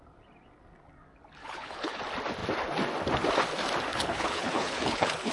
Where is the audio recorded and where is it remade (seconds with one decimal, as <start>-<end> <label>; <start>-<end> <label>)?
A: 0.0-1.4 recorded; 1.4-2.0 remade; 2.0-3.9 recorded; 3.9-5.3 remade